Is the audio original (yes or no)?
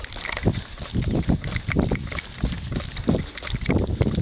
yes